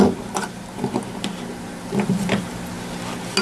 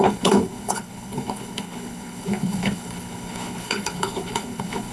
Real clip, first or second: first